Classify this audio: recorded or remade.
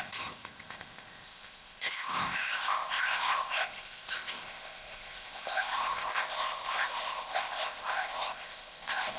remade